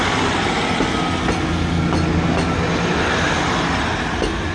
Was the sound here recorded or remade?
recorded